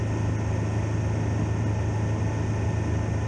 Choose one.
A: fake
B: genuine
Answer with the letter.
B